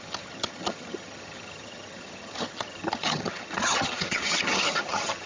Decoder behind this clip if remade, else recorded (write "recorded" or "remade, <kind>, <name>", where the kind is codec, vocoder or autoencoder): remade, vocoder, HiFi-GAN